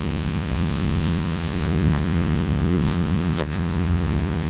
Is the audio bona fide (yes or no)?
no